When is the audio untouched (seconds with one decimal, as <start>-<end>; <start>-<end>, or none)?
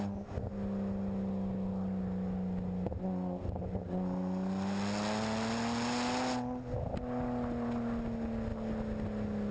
0.0-9.5